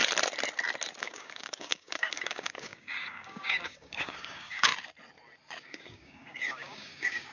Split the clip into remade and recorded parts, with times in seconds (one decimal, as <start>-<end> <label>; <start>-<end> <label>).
0.0-1.0 recorded; 1.0-4.7 remade; 4.7-5.6 recorded; 5.6-7.3 remade